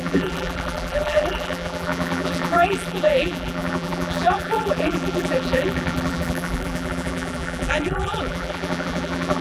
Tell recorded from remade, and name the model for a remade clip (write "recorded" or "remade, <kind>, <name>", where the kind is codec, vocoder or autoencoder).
remade, vocoder, BigVGAN v2